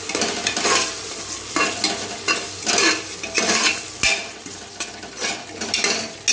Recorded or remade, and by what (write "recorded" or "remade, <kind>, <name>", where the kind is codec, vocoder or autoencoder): recorded